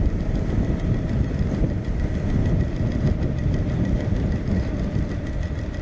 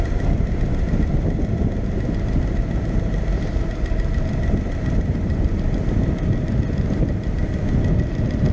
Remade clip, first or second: first